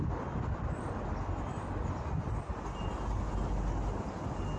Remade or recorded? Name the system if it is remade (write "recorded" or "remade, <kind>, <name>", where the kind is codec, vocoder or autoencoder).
recorded